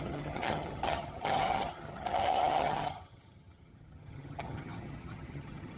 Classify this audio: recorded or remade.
remade